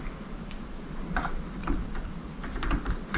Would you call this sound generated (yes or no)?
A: no